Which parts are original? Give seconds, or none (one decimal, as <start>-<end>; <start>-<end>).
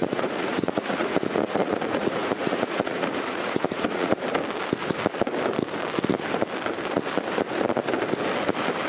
4.1-8.9